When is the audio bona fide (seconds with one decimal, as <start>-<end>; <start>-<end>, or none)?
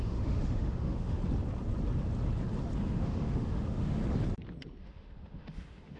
1.2-2.8; 4.0-4.8